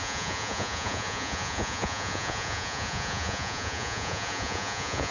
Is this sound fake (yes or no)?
yes